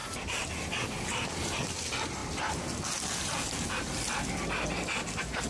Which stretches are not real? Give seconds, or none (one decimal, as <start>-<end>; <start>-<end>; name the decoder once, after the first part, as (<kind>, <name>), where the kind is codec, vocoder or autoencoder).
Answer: none